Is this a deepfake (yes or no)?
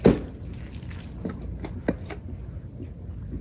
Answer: no